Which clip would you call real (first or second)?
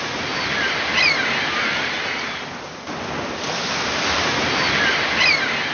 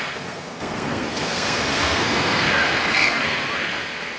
first